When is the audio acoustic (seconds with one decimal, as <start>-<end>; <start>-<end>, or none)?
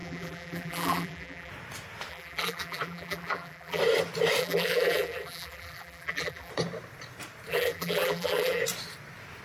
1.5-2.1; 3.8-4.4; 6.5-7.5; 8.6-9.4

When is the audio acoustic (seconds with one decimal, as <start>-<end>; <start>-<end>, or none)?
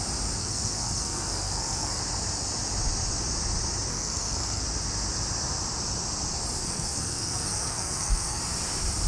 0.0-0.4; 2.0-3.9; 4.6-6.6; 8.4-9.1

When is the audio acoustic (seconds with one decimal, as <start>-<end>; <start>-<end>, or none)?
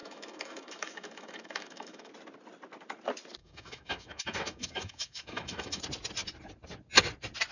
2.1-3.4; 5.8-7.5